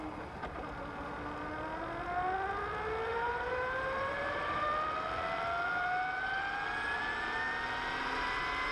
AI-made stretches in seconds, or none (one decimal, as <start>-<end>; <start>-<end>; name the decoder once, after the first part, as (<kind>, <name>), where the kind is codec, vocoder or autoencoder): 3.1-4.7 (vocoder, BigVGAN v2)